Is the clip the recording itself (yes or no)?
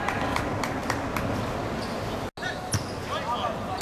yes